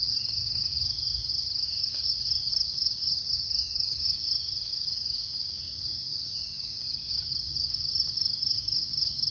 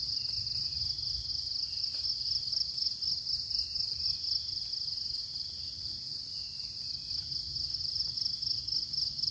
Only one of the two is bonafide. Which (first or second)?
second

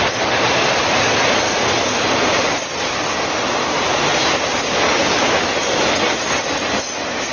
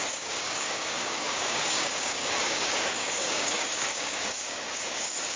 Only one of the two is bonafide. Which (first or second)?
first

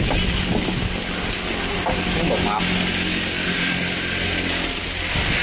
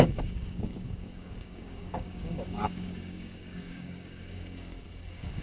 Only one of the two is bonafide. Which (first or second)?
first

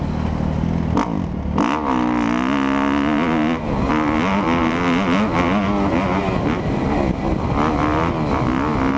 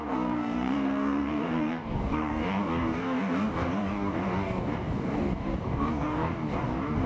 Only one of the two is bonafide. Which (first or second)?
first